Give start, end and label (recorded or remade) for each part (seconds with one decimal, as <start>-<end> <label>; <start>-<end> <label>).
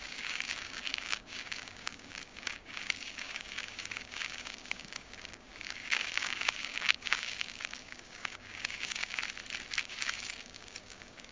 0.0-9.2 remade; 9.2-9.8 recorded; 9.8-11.3 remade